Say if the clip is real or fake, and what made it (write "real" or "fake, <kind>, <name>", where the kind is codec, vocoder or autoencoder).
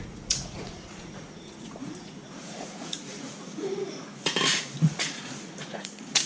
fake, vocoder, Vocos